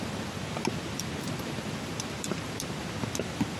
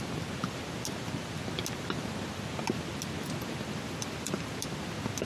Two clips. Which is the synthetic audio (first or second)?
first